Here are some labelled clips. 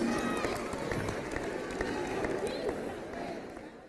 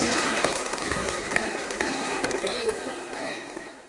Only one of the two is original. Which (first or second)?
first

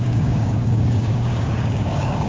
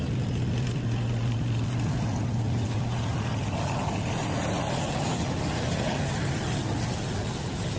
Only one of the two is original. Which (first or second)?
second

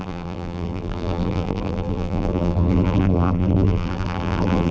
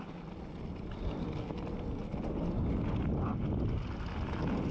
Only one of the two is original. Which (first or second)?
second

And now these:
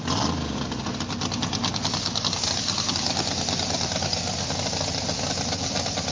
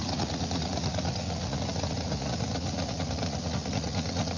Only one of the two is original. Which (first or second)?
first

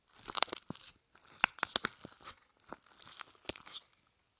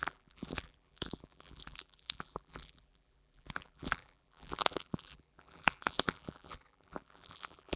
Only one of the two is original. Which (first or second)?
first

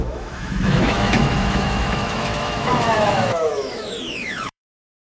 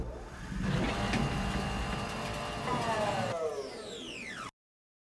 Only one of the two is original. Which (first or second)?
second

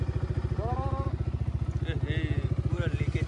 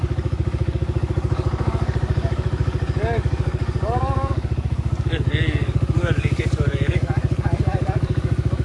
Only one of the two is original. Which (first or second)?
first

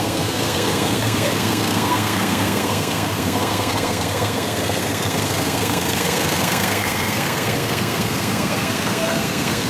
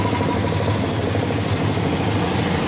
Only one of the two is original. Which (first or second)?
second